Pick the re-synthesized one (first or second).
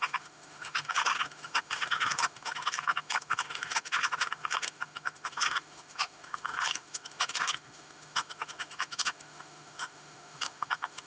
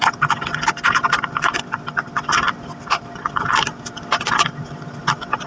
first